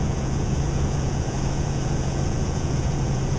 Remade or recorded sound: remade